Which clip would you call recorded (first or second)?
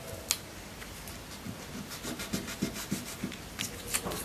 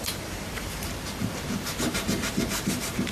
first